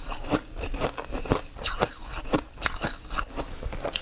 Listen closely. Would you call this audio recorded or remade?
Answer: recorded